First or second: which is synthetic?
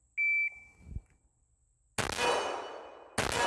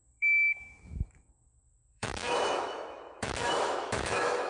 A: second